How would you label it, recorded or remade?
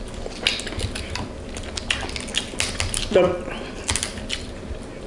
recorded